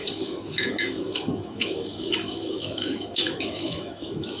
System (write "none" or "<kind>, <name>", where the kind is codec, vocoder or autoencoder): autoencoder, DAC-VAE